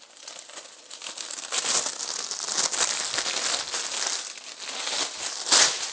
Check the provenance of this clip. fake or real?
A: real